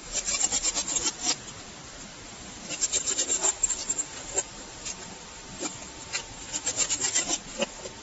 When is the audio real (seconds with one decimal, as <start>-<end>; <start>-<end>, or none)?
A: 1.6-3.4; 5.1-8.0